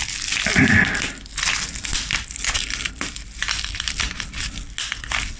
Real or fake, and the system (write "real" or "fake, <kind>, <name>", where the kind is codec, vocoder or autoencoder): real